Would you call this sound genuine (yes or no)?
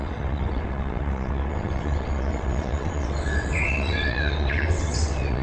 no